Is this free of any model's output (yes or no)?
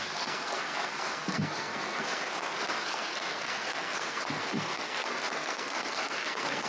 no